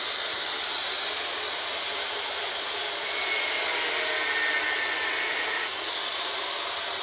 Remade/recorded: recorded